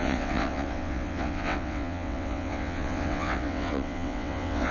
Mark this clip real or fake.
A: fake